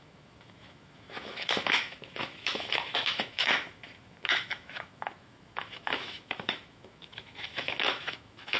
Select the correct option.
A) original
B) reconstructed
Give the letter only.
B